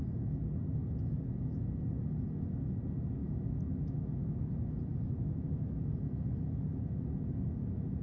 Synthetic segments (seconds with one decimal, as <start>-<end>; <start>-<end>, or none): 3.2-4.5; 4.9-5.9